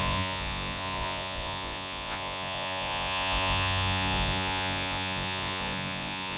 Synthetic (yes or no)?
yes